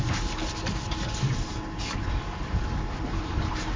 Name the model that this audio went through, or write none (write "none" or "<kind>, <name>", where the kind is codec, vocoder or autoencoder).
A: none